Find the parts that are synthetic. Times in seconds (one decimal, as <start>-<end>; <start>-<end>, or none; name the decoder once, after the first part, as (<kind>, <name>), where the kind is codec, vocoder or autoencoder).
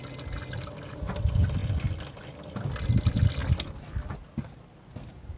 none